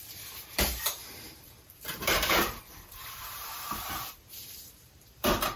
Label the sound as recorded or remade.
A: remade